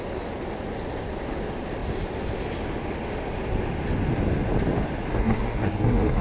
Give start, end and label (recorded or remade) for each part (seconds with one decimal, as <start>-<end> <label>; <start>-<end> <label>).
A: 0.0-5.1 recorded; 5.1-6.2 remade